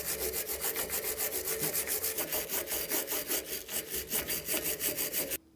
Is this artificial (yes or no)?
no